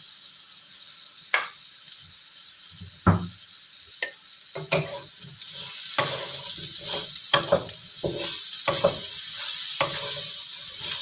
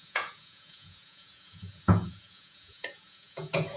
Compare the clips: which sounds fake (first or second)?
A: second